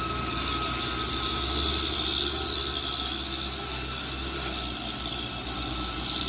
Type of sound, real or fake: real